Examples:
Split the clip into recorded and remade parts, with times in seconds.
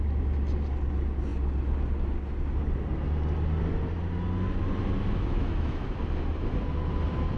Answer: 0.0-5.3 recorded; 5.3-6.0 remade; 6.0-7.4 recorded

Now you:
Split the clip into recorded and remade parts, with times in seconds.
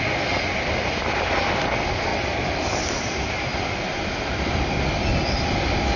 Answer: 0.0-2.1 recorded; 2.1-2.9 remade; 2.9-6.0 recorded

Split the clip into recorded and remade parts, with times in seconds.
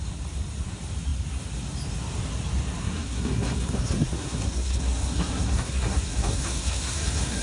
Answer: 0.0-2.8 recorded; 2.8-7.4 remade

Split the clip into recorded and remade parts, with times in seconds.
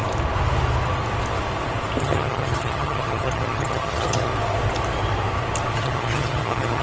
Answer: 0.0-2.0 recorded; 2.0-4.3 remade; 4.3-5.8 recorded; 5.8-6.8 remade